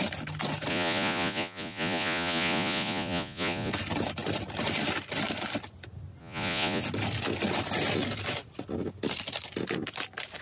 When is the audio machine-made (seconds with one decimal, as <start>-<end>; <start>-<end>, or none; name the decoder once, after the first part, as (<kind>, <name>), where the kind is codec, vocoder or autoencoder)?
0.7-3.7 (vocoder, Vocos); 6.2-6.8